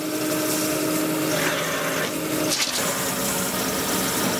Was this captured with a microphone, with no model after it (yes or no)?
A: yes